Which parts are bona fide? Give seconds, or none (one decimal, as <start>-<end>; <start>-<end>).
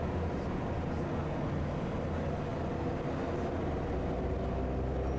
0.0-5.2